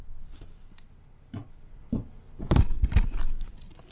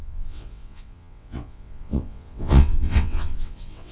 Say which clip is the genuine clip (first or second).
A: first